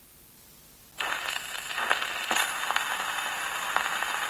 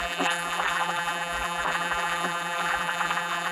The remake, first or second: second